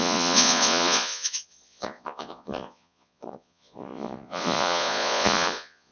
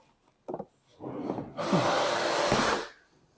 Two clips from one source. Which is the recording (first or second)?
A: second